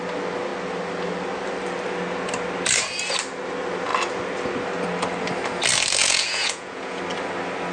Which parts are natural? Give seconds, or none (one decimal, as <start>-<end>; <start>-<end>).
0.0-6.0; 7.0-7.7